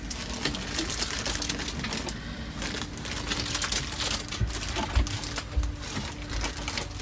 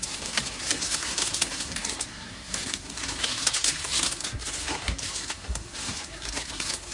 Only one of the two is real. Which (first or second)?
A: first